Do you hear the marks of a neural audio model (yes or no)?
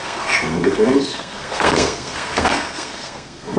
yes